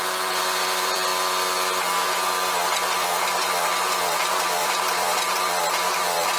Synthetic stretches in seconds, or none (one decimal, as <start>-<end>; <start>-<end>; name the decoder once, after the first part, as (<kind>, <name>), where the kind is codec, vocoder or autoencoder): 0.0-1.1 (vocoder, BigVGAN v2); 4.1-6.4